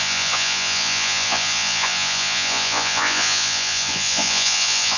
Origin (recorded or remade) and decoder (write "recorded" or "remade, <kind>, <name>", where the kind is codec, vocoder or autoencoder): remade, vocoder, Vocos